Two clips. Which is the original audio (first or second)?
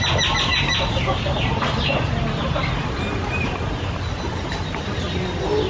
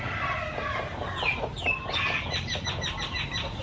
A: first